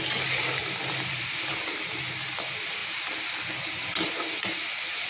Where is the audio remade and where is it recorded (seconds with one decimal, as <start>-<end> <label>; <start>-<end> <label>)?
0.0-0.6 recorded; 0.6-2.0 remade; 2.0-2.8 recorded; 2.8-4.1 remade; 4.1-5.1 recorded